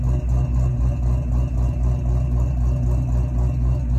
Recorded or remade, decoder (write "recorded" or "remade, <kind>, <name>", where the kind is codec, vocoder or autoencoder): recorded